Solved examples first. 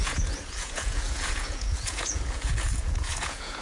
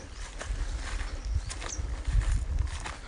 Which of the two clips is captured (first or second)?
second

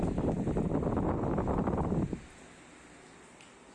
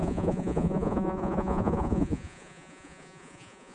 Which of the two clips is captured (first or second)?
first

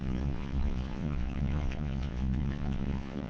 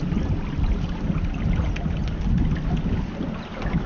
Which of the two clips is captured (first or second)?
second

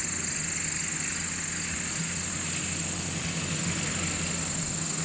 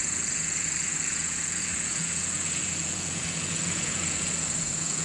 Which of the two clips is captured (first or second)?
first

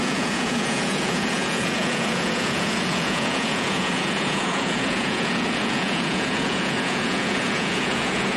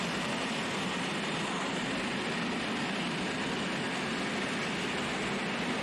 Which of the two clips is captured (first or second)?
second